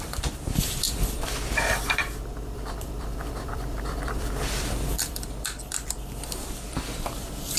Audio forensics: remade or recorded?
remade